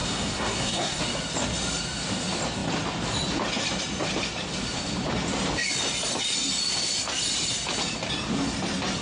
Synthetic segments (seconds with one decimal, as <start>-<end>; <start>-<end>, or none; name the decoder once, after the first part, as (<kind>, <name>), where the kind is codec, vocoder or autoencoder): 0.0-1.0 (codec, SNAC)